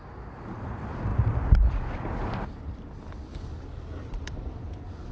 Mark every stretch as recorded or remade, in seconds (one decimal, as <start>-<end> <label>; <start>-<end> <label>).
0.0-5.1 recorded